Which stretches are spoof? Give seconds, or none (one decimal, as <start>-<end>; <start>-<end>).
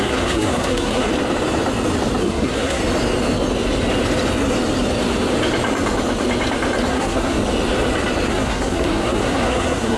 0.0-1.1; 2.2-2.8; 6.9-7.4; 8.3-10.0